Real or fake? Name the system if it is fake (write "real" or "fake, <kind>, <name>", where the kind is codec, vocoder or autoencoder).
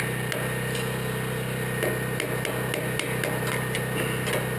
real